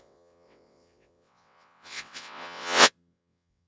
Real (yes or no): no